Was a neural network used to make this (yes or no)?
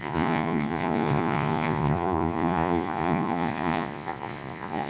yes